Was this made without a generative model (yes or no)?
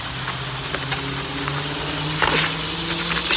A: yes